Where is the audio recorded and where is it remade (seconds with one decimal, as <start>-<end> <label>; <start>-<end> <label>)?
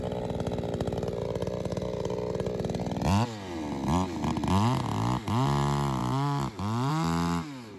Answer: 0.0-7.8 recorded